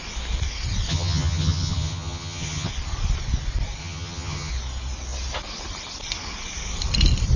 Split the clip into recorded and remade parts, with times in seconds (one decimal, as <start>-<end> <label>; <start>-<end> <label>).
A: 0.0-0.9 recorded; 0.9-2.7 remade; 2.7-3.8 recorded; 3.8-4.5 remade; 4.5-7.4 recorded